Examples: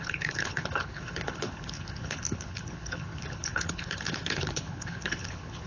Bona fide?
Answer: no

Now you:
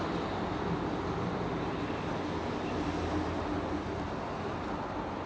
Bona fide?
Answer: yes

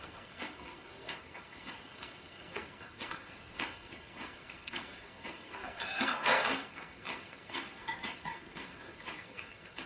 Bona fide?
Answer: no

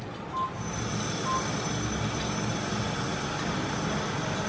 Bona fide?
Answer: yes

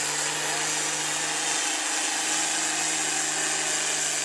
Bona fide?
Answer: yes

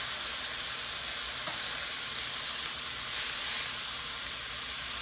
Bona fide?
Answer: yes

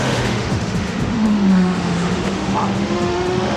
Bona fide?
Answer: no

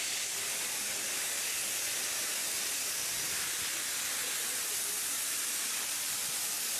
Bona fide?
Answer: yes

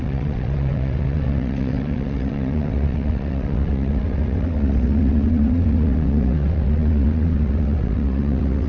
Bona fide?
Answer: no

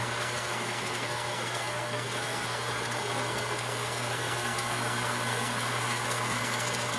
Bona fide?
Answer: no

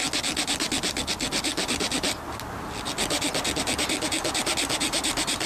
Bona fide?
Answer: yes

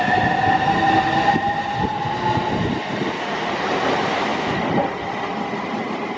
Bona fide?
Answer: yes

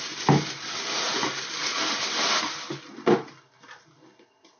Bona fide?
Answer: yes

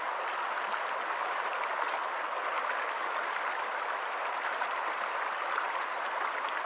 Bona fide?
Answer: yes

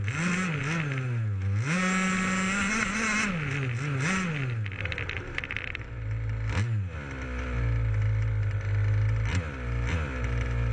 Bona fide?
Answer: yes